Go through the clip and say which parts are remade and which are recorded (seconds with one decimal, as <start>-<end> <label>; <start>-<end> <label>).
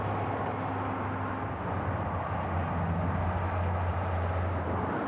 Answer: 0.0-3.9 recorded; 3.9-5.1 remade